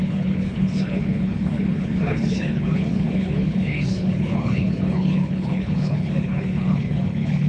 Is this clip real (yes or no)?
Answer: no